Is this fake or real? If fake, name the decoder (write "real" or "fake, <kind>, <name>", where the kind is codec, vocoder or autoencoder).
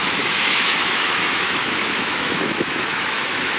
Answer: fake, autoencoder, DAC-VAE